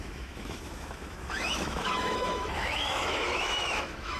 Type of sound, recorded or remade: remade